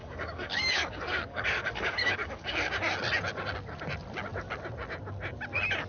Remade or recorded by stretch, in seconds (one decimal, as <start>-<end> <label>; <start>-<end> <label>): 0.0-2.7 remade; 2.7-5.9 recorded

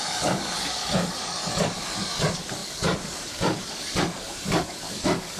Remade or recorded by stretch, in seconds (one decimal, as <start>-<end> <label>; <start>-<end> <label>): 0.0-5.4 remade

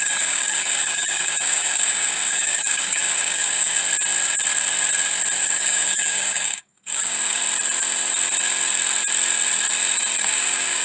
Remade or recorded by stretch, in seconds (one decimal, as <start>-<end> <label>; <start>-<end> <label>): 0.0-3.8 remade; 3.8-5.4 recorded; 5.4-7.4 remade; 7.4-10.2 recorded; 10.2-10.8 remade

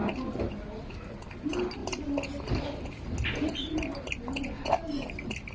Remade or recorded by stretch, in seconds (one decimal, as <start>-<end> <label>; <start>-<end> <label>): 0.0-5.5 recorded